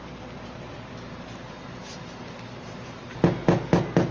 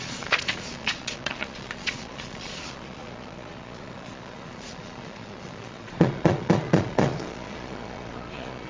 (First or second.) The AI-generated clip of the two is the second